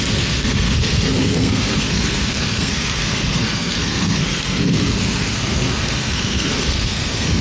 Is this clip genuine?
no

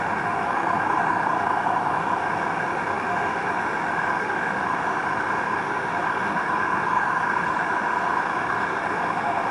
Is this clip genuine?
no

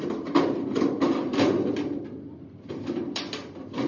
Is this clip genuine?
no